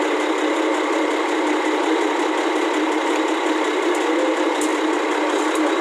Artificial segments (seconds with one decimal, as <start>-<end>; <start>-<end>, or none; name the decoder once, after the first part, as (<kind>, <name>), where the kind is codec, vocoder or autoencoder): none